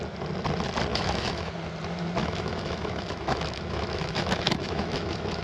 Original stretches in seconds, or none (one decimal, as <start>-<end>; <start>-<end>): 0.0-0.9; 1.5-2.2